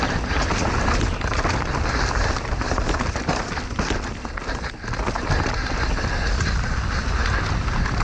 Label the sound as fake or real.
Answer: real